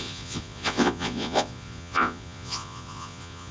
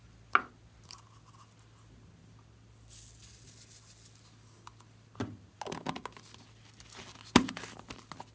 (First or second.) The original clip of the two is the second